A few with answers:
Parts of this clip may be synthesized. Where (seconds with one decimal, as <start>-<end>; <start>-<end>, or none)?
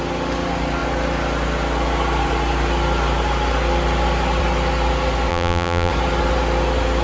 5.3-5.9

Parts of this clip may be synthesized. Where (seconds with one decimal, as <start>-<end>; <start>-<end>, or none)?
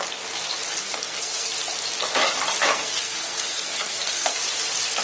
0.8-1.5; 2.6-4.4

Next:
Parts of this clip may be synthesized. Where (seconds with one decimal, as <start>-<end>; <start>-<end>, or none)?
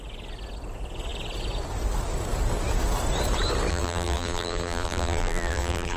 3.7-6.0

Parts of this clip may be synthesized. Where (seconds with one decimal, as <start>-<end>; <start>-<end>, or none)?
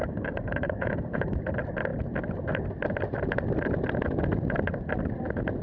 0.0-1.4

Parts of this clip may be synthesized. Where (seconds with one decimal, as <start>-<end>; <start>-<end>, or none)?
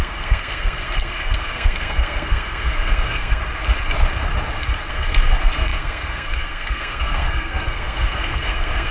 0.0-3.4; 4.9-8.9